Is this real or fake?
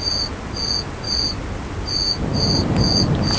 real